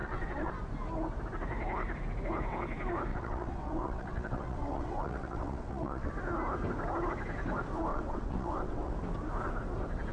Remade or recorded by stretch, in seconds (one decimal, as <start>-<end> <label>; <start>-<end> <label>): 0.0-0.5 remade; 0.5-3.1 recorded; 3.1-6.1 remade; 6.1-7.9 recorded; 7.9-8.9 remade; 8.9-10.1 recorded

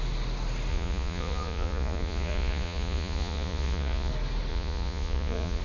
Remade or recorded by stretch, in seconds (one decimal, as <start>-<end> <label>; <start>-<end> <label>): 0.0-0.7 recorded; 0.7-4.1 remade; 4.1-4.5 recorded; 4.5-5.6 remade

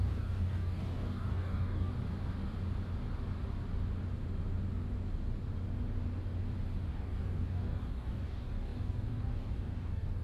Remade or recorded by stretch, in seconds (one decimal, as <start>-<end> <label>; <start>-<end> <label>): 0.0-1.9 remade; 1.9-6.9 recorded; 6.9-10.2 remade

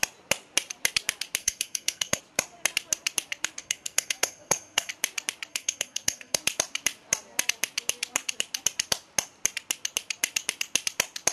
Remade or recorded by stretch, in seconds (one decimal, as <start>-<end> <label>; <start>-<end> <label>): 0.0-1.4 recorded; 1.4-2.2 remade; 2.2-3.6 recorded; 3.6-4.9 remade; 4.9-5.5 recorded; 5.5-6.4 remade; 6.4-11.3 recorded

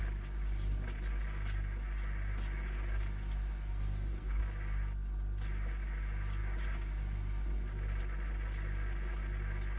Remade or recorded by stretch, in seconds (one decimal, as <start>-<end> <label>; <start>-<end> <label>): 0.0-3.7 recorded; 3.7-4.4 remade; 4.4-9.8 recorded